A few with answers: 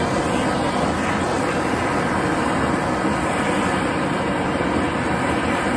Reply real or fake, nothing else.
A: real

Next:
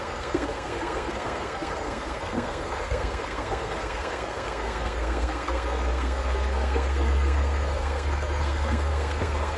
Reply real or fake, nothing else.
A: fake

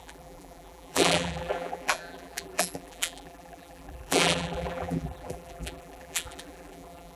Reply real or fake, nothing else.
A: fake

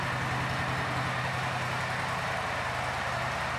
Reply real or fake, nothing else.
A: real